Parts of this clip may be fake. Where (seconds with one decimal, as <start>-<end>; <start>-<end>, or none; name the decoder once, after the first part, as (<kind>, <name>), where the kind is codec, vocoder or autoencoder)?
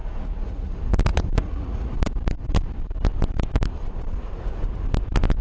0.0-0.7 (vocoder, Vocos); 1.1-1.9